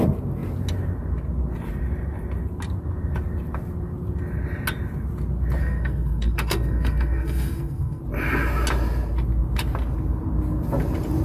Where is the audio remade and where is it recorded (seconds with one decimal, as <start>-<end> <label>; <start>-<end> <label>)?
0.0-5.6 recorded; 5.6-8.0 remade; 8.0-11.2 recorded